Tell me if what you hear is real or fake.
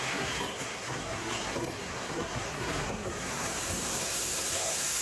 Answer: fake